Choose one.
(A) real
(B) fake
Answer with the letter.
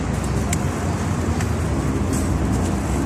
A